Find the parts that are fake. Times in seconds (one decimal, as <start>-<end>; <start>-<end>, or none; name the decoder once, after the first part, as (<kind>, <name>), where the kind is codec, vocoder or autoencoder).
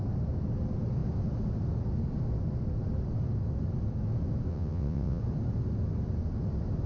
4.5-5.2 (vocoder, WaveNeXt)